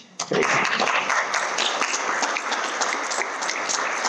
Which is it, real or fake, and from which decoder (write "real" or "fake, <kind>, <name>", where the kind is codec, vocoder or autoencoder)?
real